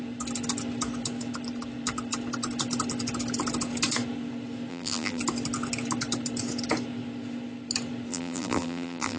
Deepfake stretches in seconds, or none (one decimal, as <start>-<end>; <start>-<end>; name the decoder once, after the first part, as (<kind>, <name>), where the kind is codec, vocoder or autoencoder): 4.7-5.2 (vocoder, BigVGAN v2); 8.1-9.2